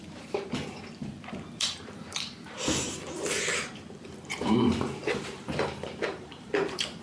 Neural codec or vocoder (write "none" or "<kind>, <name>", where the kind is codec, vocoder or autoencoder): vocoder, BigVGAN v2